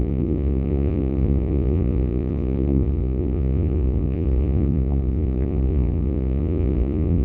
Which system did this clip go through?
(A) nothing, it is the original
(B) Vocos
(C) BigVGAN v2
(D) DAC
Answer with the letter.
B